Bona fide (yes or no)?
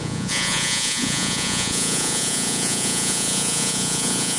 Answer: no